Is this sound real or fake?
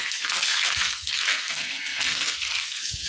fake